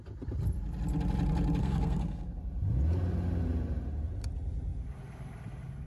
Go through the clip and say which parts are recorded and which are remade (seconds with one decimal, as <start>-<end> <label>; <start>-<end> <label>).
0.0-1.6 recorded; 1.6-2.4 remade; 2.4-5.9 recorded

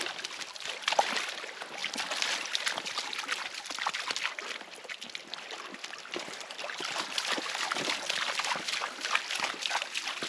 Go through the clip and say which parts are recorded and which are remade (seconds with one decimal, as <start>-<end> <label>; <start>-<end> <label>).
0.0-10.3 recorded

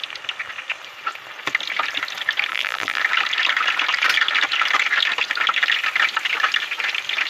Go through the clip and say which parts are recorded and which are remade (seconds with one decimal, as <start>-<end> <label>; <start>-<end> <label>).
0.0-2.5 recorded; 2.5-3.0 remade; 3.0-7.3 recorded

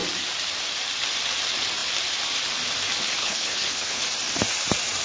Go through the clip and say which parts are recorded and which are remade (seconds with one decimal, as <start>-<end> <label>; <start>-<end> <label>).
0.0-3.2 recorded; 3.2-4.0 remade; 4.0-5.0 recorded

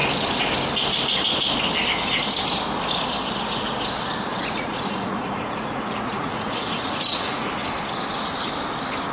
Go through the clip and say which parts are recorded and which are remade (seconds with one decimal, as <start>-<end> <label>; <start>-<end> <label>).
0.0-4.3 recorded; 4.3-7.5 remade; 7.5-9.1 recorded

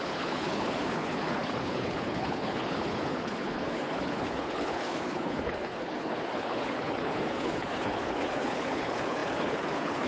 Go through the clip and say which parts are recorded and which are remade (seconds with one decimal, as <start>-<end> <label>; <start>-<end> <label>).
0.0-10.1 remade

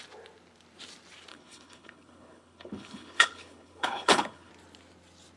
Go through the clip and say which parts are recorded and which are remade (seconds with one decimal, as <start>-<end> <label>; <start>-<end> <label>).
0.0-1.3 recorded; 1.3-4.5 remade; 4.5-5.4 recorded

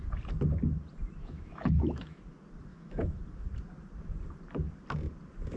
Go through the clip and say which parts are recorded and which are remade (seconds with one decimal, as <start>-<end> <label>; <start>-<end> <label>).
0.0-1.2 recorded; 1.2-2.2 remade; 2.2-2.7 recorded; 2.7-3.2 remade; 3.2-5.6 recorded